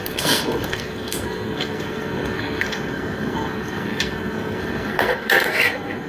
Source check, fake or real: fake